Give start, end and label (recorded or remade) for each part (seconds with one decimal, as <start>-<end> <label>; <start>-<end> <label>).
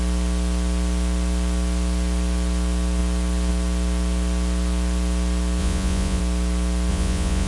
0.0-5.6 recorded; 5.6-6.2 remade; 6.2-6.9 recorded; 6.9-7.5 remade